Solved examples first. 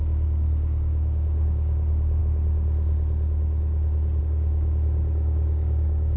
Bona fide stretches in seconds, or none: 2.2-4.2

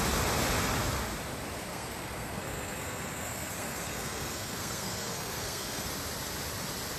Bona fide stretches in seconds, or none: 0.0-1.7; 5.9-7.0

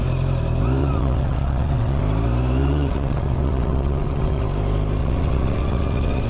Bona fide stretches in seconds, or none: 0.0-0.8; 2.0-2.6; 4.4-5.0